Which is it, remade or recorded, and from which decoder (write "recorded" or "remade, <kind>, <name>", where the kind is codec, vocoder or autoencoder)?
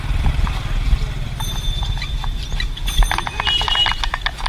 recorded